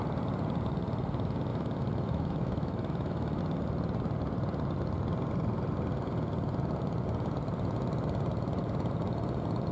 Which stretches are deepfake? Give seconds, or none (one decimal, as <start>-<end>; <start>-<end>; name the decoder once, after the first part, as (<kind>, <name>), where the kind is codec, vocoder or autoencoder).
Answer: 1.5-3.4 (autoencoder, DAC-VAE)